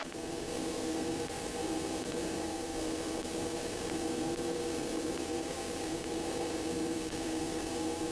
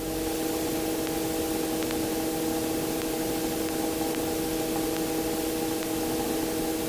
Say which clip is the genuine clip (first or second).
second